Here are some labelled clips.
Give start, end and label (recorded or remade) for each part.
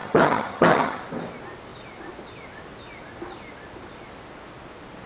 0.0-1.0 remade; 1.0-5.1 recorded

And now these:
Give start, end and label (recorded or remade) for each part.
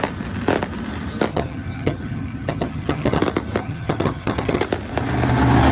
0.0-1.3 recorded; 1.3-3.2 remade; 3.2-3.6 recorded; 3.6-4.6 remade; 4.6-5.7 recorded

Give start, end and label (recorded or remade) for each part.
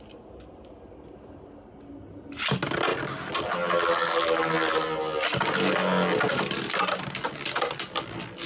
0.0-8.5 recorded